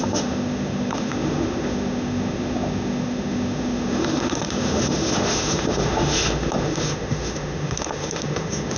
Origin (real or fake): fake